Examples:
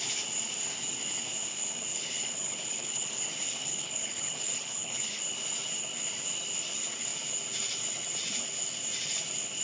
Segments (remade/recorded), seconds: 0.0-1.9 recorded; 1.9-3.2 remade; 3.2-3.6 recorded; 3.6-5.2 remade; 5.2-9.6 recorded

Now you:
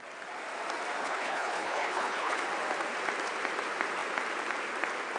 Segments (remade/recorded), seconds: 0.0-1.0 recorded; 1.0-2.4 remade; 2.4-5.2 recorded

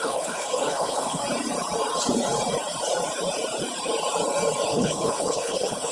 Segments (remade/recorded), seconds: 0.0-1.2 remade; 1.2-4.7 recorded; 4.7-5.9 remade

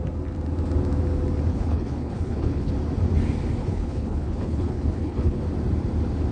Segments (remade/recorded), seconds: 0.0-1.5 recorded; 1.5-2.7 remade; 2.7-3.6 recorded; 3.6-5.4 remade; 5.4-6.3 recorded